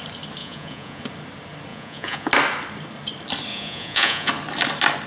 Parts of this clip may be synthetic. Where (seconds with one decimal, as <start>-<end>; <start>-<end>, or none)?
0.4-1.0; 1.7-2.3; 3.5-4.3